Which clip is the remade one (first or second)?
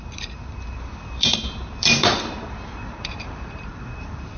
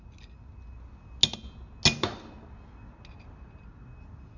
first